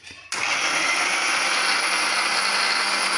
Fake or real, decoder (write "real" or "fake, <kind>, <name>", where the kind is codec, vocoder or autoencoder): real